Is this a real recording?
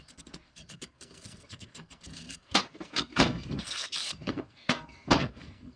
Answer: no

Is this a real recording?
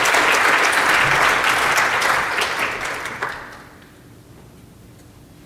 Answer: yes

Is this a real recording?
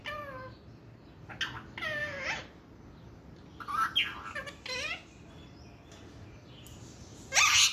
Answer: yes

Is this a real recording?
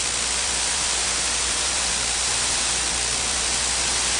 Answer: no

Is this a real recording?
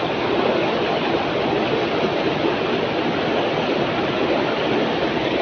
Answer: yes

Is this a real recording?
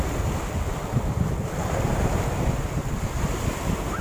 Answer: yes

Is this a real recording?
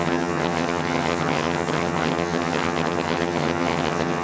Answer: no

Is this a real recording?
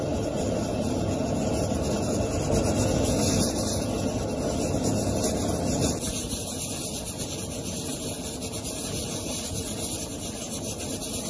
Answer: yes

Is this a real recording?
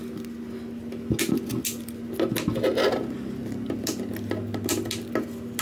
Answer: yes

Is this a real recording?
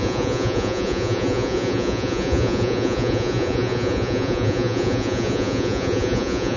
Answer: no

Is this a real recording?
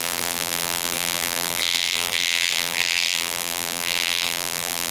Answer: no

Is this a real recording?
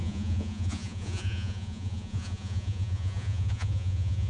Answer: no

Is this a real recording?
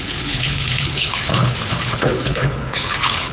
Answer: no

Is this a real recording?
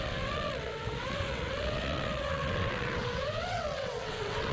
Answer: no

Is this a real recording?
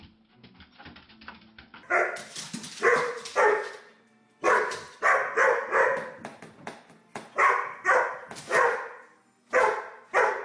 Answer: yes